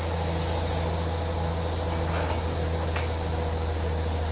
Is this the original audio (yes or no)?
yes